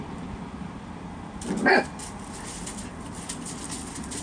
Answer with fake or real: real